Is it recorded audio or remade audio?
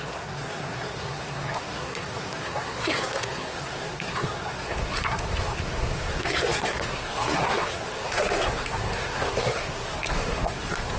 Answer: remade